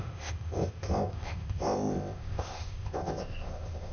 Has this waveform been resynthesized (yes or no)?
yes